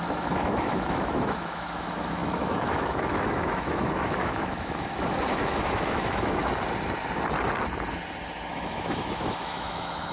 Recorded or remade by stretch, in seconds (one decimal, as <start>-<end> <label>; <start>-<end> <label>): 0.0-6.4 remade; 6.4-8.5 recorded; 8.5-10.1 remade